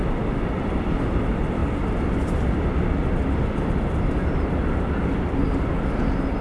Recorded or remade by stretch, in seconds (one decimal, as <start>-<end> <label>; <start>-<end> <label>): 0.0-6.4 recorded